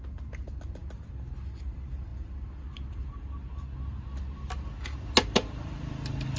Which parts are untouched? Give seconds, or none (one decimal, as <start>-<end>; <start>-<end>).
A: 0.0-6.4